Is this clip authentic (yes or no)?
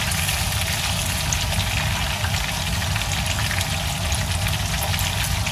yes